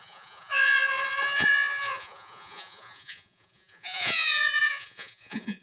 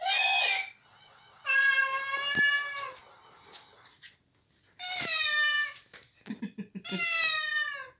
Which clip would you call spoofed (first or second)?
first